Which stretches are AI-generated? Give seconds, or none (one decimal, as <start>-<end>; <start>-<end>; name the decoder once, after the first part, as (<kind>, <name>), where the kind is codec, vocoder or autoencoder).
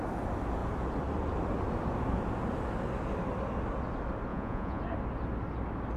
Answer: 4.3-4.8 (vocoder, Vocos)